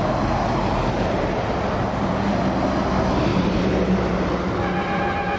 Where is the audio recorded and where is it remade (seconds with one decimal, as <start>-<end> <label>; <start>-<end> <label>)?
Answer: 0.0-1.2 remade; 1.2-1.8 recorded; 1.8-2.4 remade; 2.4-3.3 recorded; 3.3-4.0 remade; 4.0-5.4 recorded